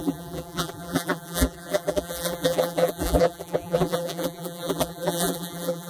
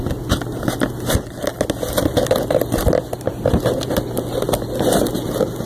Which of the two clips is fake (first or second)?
first